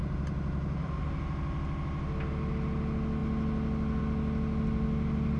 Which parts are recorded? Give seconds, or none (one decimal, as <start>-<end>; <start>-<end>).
0.0-5.4